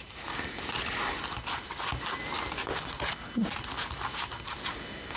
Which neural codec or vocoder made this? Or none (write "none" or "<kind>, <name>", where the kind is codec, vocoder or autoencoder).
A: none